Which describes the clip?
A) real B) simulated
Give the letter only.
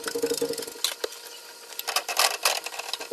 A